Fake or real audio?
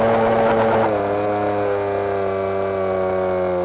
real